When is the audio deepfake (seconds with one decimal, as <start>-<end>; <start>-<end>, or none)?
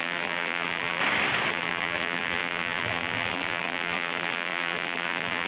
0.0-1.0; 1.5-5.5